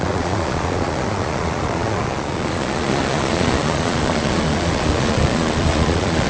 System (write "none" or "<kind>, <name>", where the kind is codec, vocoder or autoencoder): vocoder, Vocos